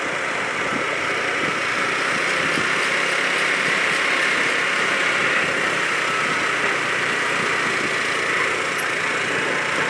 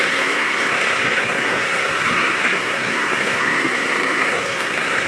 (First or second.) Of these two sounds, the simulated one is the second